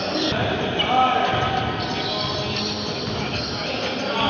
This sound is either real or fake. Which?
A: real